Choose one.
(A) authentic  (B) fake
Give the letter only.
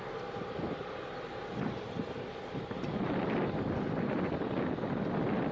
A